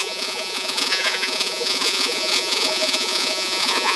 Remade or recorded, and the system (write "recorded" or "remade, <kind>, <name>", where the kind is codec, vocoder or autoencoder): remade, vocoder, Vocos